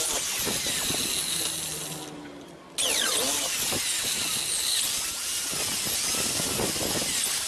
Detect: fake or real real